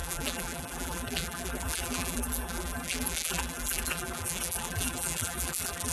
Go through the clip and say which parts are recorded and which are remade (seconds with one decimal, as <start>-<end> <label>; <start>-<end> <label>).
0.0-5.9 remade